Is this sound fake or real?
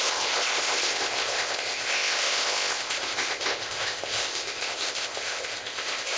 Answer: fake